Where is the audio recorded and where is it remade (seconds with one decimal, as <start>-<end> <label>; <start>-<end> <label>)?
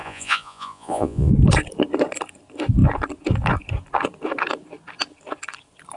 0.0-1.3 remade; 1.3-6.0 recorded